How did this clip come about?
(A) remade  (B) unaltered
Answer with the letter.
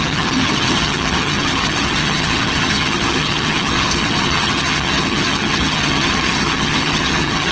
A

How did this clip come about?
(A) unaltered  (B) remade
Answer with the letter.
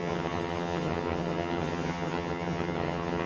B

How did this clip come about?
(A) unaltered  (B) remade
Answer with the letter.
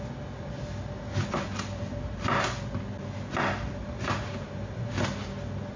A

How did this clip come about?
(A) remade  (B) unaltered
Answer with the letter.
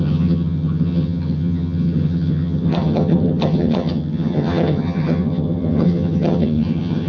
A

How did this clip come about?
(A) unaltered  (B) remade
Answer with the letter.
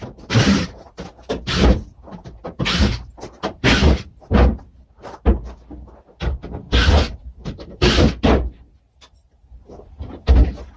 A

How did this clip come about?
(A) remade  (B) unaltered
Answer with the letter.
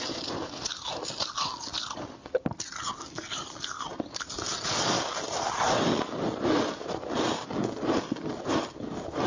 B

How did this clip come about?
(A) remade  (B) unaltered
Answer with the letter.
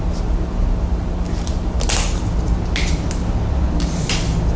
B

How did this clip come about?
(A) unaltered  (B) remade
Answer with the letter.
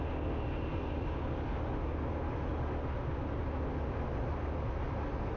A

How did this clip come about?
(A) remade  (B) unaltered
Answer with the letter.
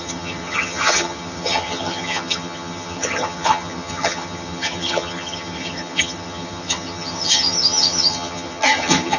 A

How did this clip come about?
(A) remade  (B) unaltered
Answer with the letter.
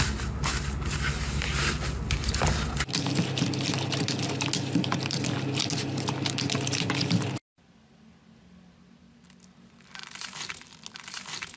B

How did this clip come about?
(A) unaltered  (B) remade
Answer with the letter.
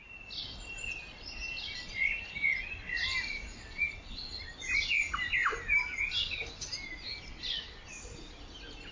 A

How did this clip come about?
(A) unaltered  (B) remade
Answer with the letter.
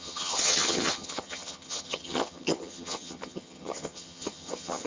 B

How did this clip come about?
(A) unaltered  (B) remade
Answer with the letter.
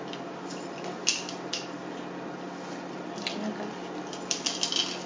A